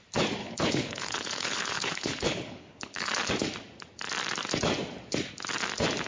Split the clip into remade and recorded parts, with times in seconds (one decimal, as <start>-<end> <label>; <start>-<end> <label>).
0.0-0.4 recorded; 0.4-3.3 remade; 3.3-6.1 recorded